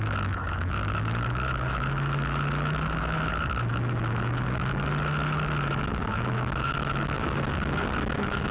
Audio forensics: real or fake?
fake